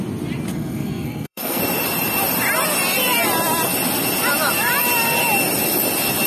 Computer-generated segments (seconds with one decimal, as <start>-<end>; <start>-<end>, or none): 0.5-1.6